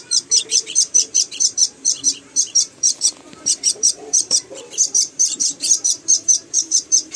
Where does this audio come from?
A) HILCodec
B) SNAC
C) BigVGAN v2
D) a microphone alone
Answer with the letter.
C